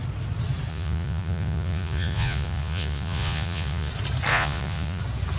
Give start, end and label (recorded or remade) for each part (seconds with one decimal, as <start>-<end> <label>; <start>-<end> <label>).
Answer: 0.0-0.7 recorded; 0.7-3.9 remade; 3.9-4.3 recorded; 4.3-5.0 remade; 5.0-5.4 recorded